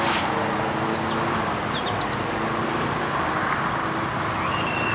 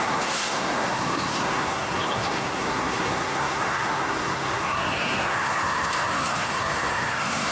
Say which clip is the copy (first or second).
second